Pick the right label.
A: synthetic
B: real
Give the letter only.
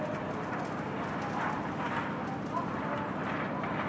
B